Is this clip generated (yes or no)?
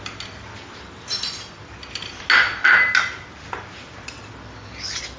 no